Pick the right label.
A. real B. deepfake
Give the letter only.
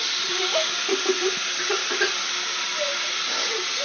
A